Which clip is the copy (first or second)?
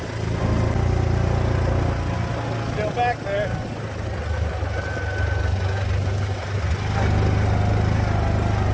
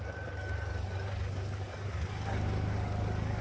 second